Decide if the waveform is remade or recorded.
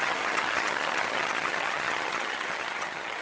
remade